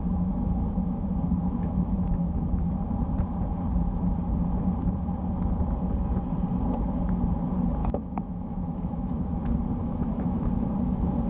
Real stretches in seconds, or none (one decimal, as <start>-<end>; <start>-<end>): 0.0-1.4; 2.4-7.8; 9.4-9.8; 10.5-11.3